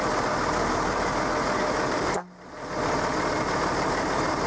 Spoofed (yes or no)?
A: no